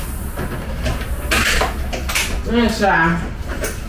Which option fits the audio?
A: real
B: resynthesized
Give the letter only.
A